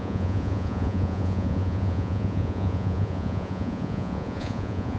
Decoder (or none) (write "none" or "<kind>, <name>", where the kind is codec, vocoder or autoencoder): vocoder, Vocos